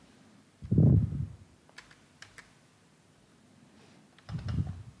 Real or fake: real